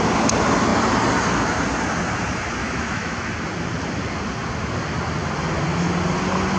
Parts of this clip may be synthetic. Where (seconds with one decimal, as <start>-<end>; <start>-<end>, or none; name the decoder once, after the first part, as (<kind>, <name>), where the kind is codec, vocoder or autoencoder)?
2.6-3.3 (autoencoder, DAC-VAE)

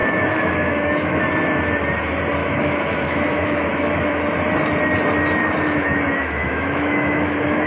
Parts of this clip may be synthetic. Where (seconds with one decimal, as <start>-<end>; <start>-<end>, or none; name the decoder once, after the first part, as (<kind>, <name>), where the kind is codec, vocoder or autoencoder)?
0.0-1.2 (autoencoder, DAC-VAE); 2.4-4.2; 5.4-7.7

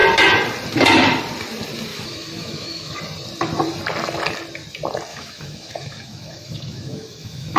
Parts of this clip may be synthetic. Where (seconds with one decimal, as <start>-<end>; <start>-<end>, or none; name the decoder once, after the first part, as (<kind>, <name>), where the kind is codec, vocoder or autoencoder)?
1.9-3.0 (autoencoder, DAC-VAE); 5.1-7.6